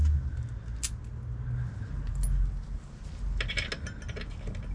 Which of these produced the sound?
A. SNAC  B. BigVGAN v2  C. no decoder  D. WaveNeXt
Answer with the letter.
C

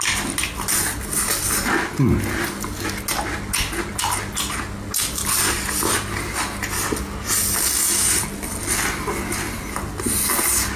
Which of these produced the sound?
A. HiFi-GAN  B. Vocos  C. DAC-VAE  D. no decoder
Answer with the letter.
D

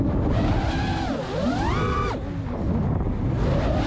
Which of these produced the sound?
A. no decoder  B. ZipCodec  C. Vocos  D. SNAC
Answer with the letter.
A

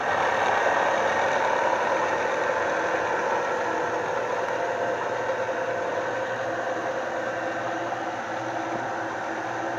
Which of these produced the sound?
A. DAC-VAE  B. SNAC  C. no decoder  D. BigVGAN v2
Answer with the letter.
C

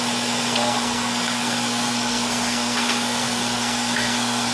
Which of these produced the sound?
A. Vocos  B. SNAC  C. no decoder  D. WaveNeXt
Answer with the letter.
B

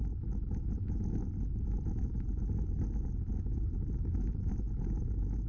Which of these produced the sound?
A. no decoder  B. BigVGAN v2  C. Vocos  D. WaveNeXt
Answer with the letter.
A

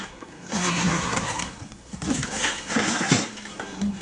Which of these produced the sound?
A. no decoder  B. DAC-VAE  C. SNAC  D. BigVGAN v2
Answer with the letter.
C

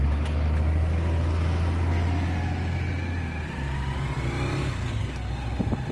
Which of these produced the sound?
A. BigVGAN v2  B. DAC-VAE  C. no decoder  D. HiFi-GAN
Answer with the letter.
C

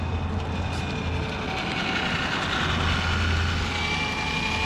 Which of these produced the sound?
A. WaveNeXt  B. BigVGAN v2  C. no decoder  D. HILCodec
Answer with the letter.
C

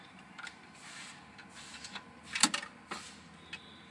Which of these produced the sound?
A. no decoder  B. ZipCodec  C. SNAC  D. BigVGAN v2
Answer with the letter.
A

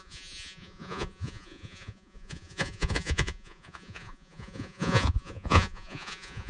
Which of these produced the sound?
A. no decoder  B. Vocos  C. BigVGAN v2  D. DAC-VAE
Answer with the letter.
B